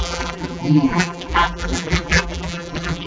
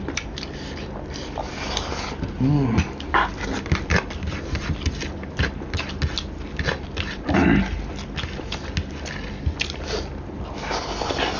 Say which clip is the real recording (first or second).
second